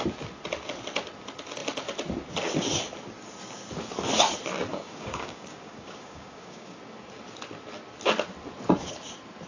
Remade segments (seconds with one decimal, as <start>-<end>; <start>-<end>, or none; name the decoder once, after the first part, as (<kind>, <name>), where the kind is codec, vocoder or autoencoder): 4.7-6.8 (codec, DAC)